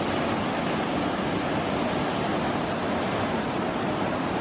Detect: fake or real real